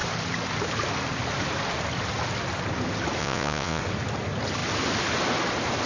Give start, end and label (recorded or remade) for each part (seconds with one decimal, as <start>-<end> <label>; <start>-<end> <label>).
0.0-3.2 recorded; 3.2-3.8 remade; 3.8-5.9 recorded